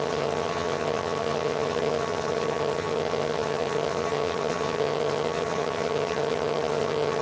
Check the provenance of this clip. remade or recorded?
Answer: remade